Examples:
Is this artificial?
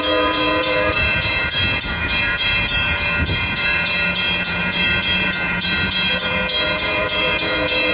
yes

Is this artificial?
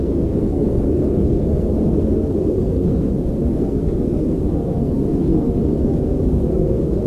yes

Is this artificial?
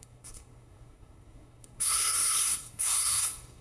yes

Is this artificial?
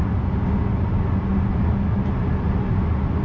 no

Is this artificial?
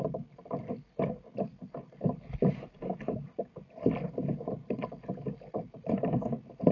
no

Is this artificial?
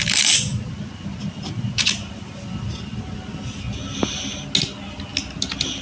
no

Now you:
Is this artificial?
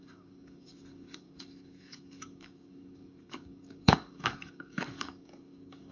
yes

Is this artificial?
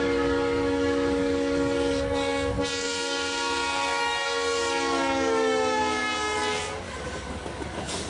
yes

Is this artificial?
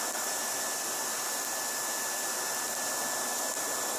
no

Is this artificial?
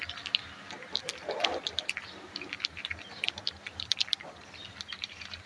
yes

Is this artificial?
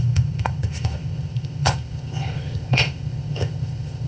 yes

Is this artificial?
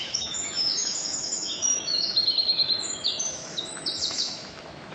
yes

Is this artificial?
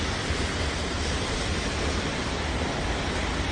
no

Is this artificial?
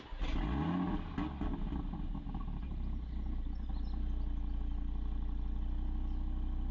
no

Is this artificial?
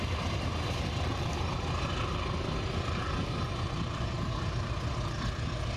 no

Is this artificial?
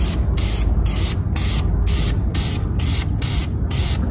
no